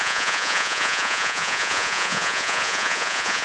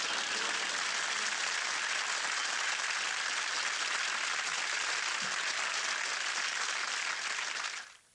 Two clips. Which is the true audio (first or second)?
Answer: second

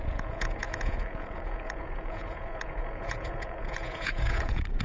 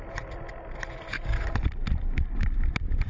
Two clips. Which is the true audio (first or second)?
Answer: second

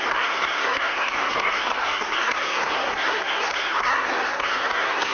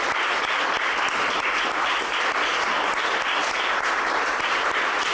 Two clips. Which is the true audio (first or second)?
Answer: second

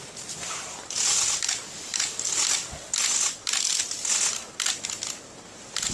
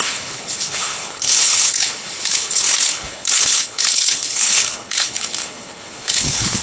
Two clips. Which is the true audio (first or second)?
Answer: first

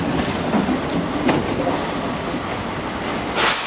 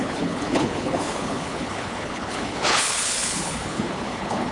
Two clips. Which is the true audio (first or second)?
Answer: first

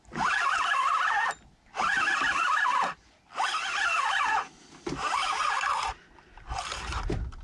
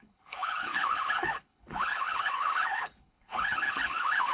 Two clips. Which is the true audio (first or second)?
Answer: first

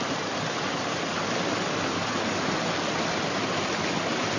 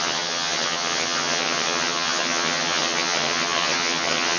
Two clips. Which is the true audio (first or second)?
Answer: first